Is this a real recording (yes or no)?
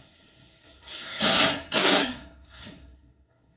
no